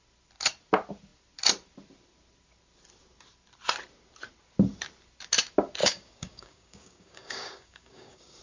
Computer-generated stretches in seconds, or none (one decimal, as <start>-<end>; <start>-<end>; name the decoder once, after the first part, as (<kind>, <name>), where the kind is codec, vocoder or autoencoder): 5.8-8.4 (codec, DAC)